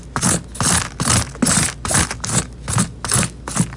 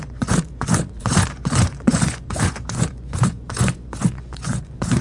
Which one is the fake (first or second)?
second